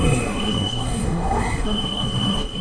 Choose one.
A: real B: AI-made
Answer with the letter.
B